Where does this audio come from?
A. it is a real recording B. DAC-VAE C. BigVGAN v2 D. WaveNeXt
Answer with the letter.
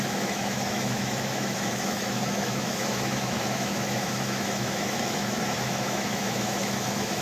B